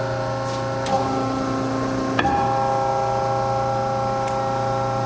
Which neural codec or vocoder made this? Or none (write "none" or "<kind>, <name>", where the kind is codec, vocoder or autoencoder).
none